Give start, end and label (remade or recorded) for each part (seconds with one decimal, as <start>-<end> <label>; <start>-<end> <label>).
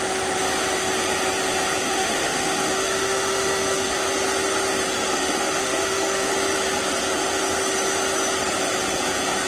0.0-1.8 recorded; 1.8-3.9 remade; 3.9-5.1 recorded; 5.1-6.3 remade; 6.3-9.5 recorded